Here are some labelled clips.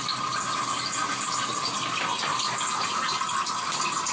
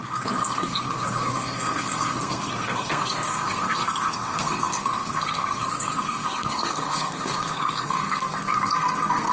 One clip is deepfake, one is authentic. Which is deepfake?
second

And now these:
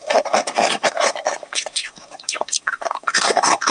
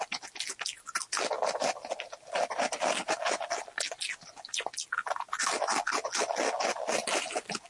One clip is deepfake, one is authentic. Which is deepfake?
first